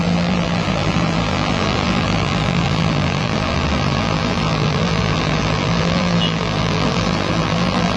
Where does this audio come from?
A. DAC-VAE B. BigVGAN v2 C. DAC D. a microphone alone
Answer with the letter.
B